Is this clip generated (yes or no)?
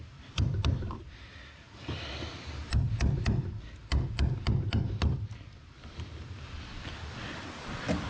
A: yes